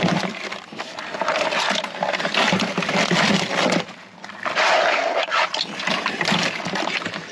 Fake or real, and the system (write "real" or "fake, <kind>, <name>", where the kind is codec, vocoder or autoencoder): real